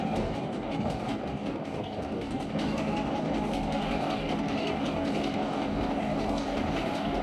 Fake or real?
fake